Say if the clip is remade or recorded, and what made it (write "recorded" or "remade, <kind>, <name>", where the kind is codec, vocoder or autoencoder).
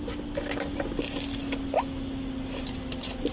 recorded